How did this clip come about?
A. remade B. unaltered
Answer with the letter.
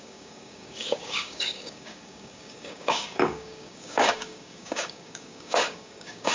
A